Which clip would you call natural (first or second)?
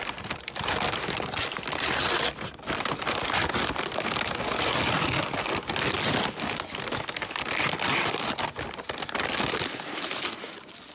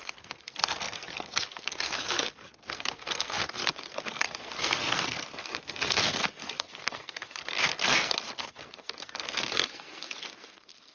first